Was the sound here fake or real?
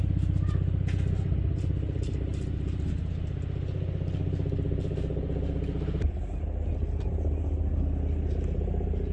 real